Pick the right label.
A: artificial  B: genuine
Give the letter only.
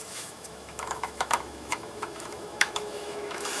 A